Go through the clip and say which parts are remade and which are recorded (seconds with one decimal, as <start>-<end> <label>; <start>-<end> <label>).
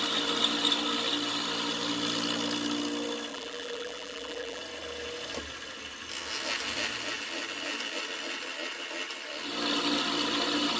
0.0-3.3 recorded; 3.3-4.6 remade; 4.6-10.8 recorded